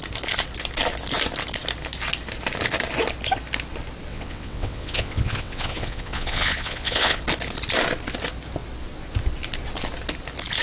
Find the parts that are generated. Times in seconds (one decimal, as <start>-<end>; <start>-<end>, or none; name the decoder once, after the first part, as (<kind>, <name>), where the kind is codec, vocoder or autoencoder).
4.1-7.2 (vocoder, WaveNeXt)